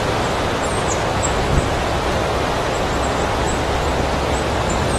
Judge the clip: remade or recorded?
recorded